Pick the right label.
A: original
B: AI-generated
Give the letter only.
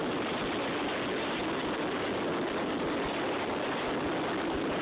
A